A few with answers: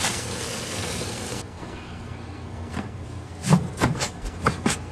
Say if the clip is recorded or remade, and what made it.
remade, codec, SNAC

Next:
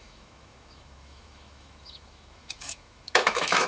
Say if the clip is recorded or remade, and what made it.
remade, autoencoder, DAC-VAE